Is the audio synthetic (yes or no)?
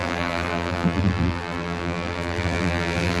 yes